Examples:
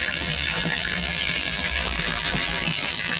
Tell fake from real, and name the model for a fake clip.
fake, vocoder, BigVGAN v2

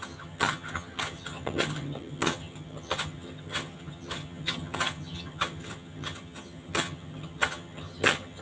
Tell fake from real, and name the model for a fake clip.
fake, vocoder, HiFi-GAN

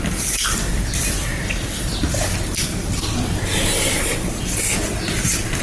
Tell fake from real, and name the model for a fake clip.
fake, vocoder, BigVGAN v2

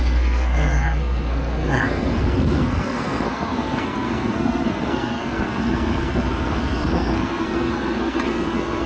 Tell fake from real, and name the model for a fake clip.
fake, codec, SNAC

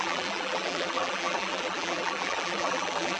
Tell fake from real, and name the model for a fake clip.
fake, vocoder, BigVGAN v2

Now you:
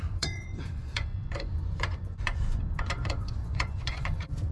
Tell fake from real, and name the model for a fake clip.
fake, vocoder, Vocos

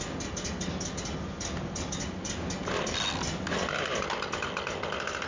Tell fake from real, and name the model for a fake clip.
real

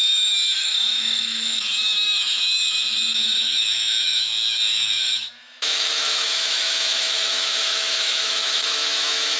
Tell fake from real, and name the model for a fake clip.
fake, autoencoder, DAC-VAE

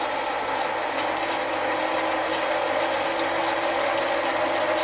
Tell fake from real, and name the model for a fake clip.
real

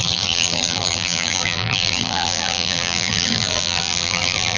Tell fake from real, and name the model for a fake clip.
fake, vocoder, BigVGAN v2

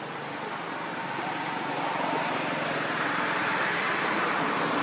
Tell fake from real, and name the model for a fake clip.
real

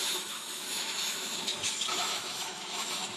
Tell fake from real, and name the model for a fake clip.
fake, autoencoder, DAC-VAE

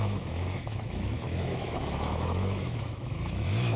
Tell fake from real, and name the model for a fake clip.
fake, autoencoder, DAC-VAE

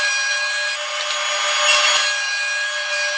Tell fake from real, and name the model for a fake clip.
real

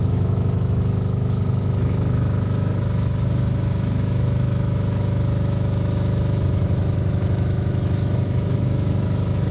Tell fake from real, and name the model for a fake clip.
fake, autoencoder, DAC-VAE